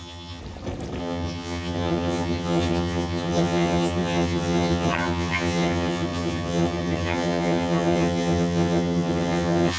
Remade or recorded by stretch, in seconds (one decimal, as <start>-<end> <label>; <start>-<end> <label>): 0.0-0.4 remade; 0.4-1.0 recorded; 1.0-9.8 remade